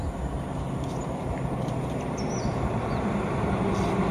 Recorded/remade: recorded